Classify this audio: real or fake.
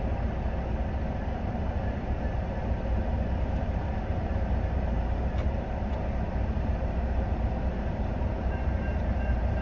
fake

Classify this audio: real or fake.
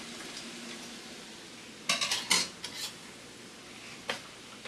real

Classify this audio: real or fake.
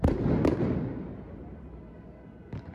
real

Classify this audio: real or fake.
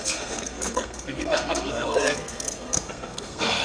fake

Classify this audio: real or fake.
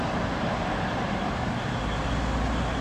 real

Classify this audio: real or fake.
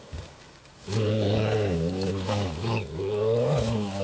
fake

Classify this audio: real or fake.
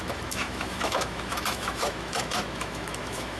fake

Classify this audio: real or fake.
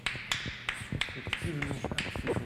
real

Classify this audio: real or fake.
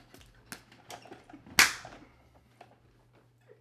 real